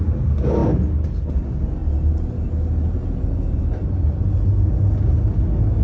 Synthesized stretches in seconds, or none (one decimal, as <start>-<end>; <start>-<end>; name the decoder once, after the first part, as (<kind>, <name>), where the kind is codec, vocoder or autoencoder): none